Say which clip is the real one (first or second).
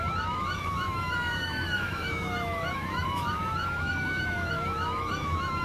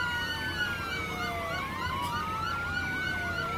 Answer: second